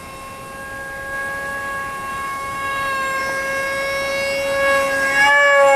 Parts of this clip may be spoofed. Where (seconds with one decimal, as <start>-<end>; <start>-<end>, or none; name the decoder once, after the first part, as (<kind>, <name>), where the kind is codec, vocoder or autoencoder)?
2.1-3.2 (autoencoder, DAC-VAE)